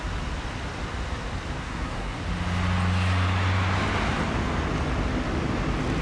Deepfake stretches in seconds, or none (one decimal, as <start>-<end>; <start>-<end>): 1.6-2.2